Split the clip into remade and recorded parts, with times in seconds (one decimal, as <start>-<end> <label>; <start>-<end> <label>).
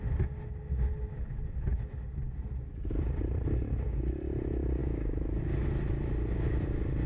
0.0-4.8 recorded; 4.8-5.4 remade; 5.4-7.1 recorded